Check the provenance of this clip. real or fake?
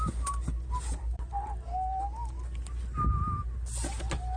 real